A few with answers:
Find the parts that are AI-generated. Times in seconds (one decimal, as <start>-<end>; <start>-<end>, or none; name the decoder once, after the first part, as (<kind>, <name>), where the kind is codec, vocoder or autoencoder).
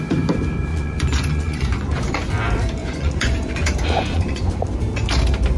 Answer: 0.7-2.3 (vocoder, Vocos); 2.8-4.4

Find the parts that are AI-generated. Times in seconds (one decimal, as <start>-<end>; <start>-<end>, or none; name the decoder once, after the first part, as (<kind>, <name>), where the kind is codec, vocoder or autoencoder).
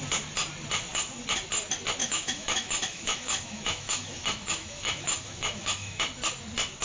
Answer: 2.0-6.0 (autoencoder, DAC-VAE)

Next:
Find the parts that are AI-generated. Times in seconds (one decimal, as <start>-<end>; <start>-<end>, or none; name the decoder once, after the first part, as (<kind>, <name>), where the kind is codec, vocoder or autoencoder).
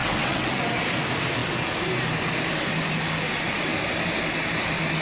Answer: 0.0-0.7 (vocoder, WaveNeXt)